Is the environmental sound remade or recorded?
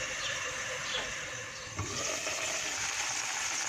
remade